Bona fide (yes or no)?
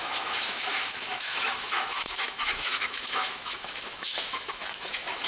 no